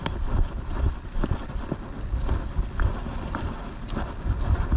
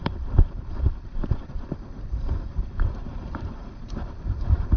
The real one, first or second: first